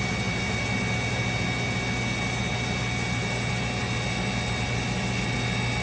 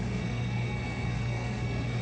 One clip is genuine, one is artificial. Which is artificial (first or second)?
second